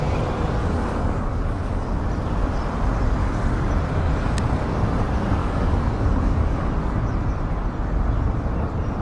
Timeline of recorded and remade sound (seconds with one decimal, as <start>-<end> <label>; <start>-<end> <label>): 0.0-0.6 recorded; 0.6-2.0 remade; 2.0-3.2 recorded; 3.2-3.7 remade; 3.7-5.4 recorded; 5.4-6.7 remade; 6.7-9.0 recorded